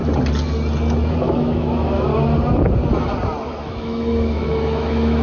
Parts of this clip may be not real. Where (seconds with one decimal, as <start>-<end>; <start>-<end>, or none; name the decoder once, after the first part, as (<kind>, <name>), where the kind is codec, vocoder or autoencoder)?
1.2-2.1 (autoencoder, DAC-VAE); 3.6-5.2